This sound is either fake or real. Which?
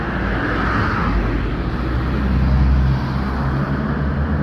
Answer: real